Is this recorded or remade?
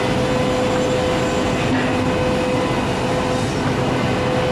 recorded